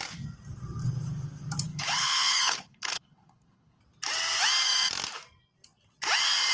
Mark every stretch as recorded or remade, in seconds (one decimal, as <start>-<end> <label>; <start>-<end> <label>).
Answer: 0.0-1.7 recorded; 1.7-3.8 remade; 3.8-6.5 recorded